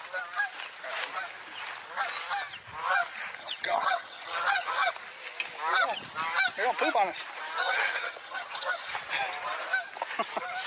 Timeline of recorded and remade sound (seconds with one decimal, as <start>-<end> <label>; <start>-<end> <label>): 0.0-3.4 recorded; 3.4-4.9 remade; 4.9-7.6 recorded; 7.6-8.9 remade; 8.9-10.7 recorded

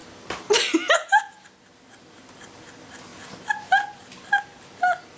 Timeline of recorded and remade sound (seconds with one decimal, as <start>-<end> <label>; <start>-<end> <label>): 0.0-5.2 recorded

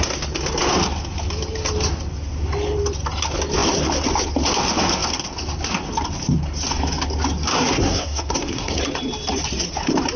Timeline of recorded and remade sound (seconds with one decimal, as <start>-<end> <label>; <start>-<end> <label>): 0.0-7.5 recorded; 7.5-8.8 remade; 8.8-10.2 recorded

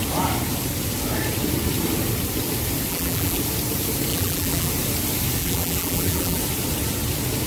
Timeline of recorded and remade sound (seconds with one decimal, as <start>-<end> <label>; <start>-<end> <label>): 0.0-2.9 recorded; 2.9-3.4 remade; 3.4-4.1 recorded; 4.1-4.7 remade; 4.7-5.4 recorded; 5.4-6.4 remade; 6.4-7.5 recorded

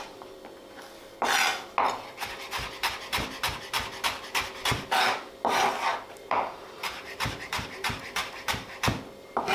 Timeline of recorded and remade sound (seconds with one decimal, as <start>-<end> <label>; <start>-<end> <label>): 0.0-5.9 recorded; 5.9-8.7 remade; 8.7-9.5 recorded